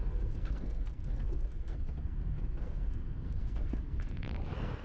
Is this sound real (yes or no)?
no